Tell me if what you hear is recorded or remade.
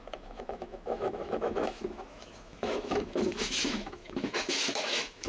remade